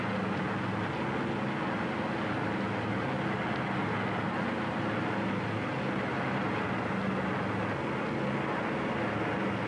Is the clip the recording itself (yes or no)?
yes